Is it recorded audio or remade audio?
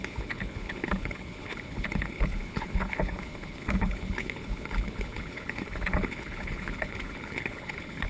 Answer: remade